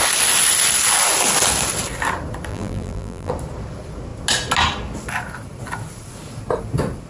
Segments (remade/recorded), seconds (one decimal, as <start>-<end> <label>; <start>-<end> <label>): 0.0-2.5 recorded; 2.5-3.3 remade; 3.3-7.1 recorded